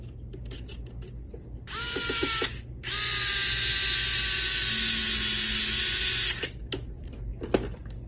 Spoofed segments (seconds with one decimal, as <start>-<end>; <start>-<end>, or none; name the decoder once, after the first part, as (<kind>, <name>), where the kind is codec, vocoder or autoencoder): none